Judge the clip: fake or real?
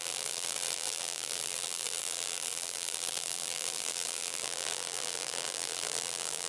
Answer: fake